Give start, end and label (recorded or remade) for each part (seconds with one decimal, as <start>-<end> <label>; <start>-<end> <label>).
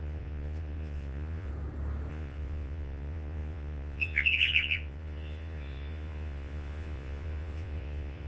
0.0-1.5 remade; 1.5-2.1 recorded; 2.1-8.3 remade